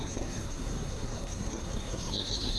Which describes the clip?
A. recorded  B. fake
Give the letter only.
B